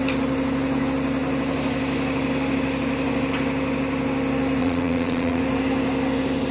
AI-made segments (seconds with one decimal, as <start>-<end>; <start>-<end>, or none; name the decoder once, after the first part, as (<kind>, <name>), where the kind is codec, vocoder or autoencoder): 4.6-5.4 (vocoder, Vocos)